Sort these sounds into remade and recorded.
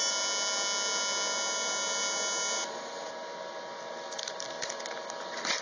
recorded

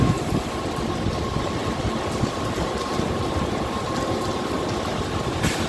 recorded